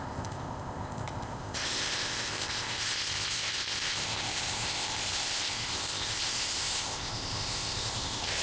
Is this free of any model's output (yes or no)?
no